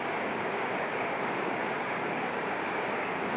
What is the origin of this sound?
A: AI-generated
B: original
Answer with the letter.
A